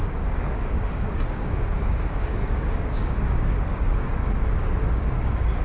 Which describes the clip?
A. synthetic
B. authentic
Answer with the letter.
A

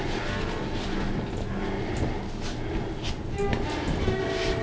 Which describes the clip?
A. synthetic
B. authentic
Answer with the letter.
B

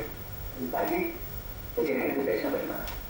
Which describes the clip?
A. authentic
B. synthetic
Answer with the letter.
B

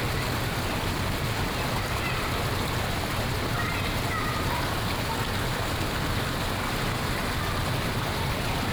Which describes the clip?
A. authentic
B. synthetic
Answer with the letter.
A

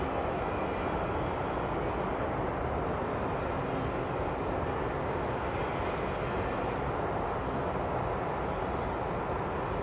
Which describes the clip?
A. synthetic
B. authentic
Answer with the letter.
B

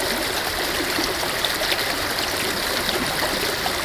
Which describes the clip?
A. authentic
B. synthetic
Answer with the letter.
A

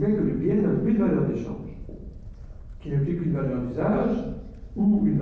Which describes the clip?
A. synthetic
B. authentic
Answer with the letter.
B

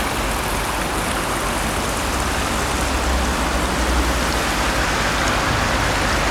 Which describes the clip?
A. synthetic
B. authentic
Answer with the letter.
B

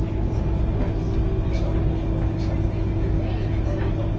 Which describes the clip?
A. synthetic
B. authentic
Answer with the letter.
B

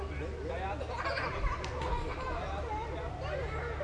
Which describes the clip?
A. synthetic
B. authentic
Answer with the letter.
B